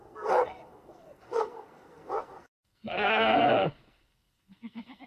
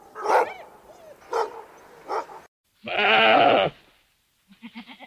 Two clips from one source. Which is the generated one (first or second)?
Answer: first